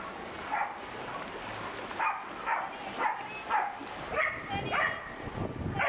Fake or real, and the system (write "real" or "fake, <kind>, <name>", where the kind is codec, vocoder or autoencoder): real